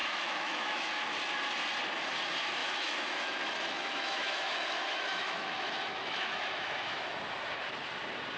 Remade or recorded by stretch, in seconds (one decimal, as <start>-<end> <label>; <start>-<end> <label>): 0.0-1.0 remade; 1.0-2.6 recorded; 2.6-7.0 remade; 7.0-8.4 recorded